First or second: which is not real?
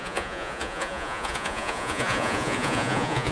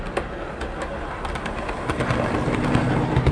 first